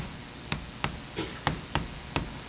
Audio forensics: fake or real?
real